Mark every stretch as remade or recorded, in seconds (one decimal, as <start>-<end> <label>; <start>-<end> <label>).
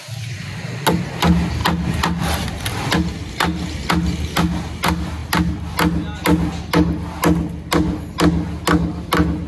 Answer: 0.0-9.5 recorded